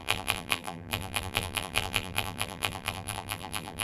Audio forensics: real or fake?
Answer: fake